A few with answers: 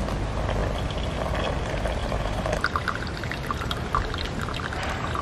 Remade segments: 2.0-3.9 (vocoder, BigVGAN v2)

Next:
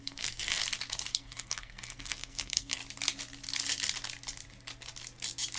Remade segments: 0.0-0.6 (codec, SNAC); 1.1-2.8

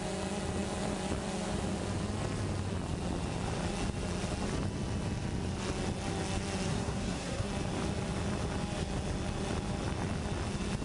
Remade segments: 6.7-7.5 (codec, SNAC)

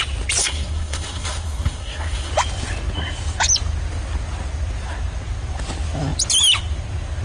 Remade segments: 0.4-2.3 (codec, SNAC)

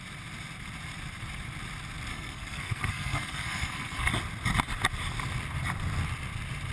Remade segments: 2.1-4.1 (codec, SNAC)

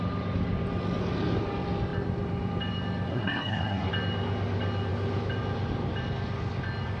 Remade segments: 3.1-3.9 (codec, SNAC)